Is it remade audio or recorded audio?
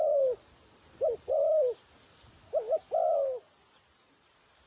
recorded